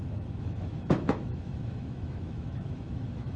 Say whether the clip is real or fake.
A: fake